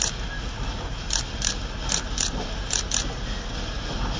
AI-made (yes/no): no